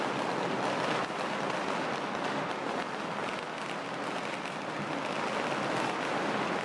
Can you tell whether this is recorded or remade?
recorded